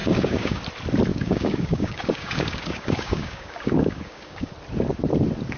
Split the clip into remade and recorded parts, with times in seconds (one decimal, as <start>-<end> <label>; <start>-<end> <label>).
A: 0.0-0.6 remade; 0.6-1.1 recorded; 1.1-4.5 remade; 4.5-5.6 recorded